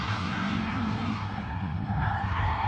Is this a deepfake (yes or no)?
yes